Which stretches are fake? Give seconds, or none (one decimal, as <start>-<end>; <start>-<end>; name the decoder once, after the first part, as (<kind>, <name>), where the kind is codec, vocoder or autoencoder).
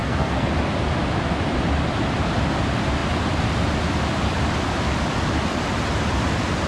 0.0-0.5 (codec, SNAC)